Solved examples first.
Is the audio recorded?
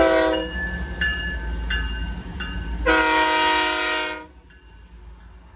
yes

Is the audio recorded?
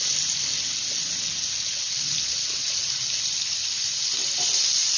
yes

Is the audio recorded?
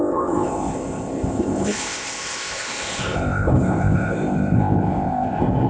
no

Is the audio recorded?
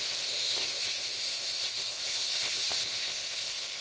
no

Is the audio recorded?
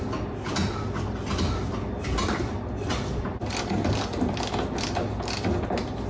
yes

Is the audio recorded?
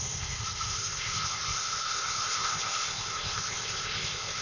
no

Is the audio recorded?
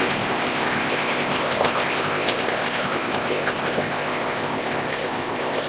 no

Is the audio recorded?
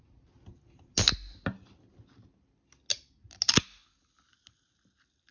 yes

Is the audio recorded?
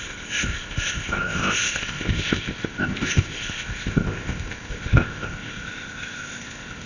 no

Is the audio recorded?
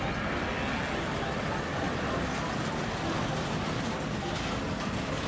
yes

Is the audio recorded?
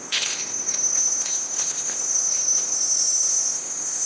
no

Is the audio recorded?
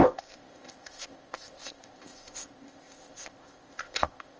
no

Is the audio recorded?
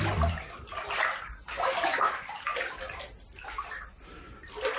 yes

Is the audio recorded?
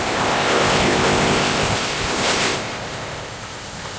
no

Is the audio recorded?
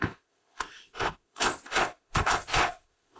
no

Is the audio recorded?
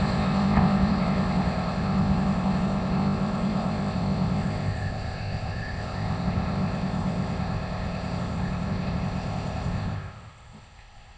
no